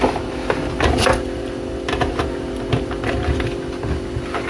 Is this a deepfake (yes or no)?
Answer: no